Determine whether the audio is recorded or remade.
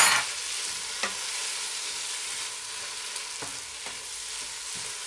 recorded